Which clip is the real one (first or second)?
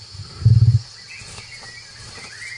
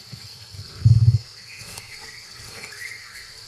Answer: first